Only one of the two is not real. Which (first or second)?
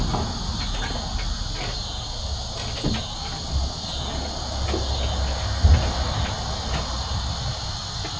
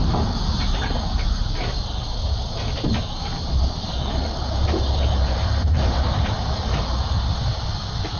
second